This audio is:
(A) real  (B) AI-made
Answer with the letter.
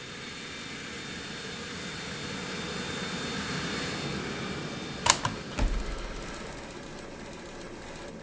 A